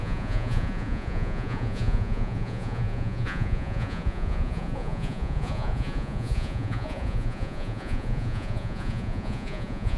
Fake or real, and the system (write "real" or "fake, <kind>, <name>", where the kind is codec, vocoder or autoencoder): fake, vocoder, Vocos